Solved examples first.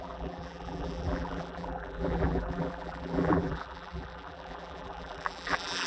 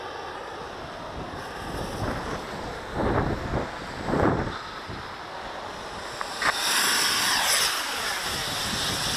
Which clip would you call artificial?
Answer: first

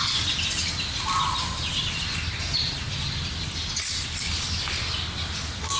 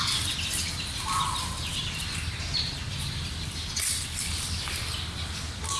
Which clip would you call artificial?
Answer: second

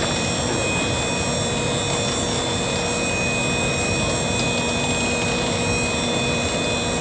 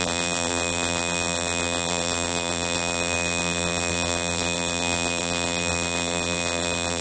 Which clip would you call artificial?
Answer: second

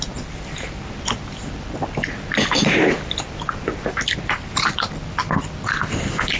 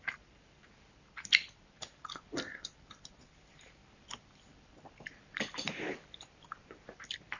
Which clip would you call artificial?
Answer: second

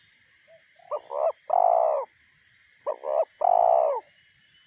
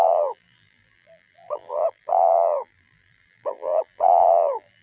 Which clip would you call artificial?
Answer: second